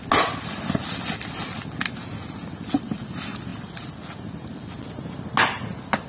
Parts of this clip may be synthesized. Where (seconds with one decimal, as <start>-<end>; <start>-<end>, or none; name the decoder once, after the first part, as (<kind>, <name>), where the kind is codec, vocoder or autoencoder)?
none